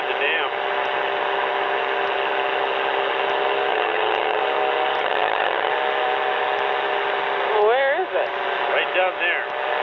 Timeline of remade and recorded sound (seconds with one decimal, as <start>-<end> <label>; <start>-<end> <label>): 0.0-3.7 recorded; 3.7-4.4 remade; 4.4-5.0 recorded; 5.0-5.7 remade; 5.7-9.8 recorded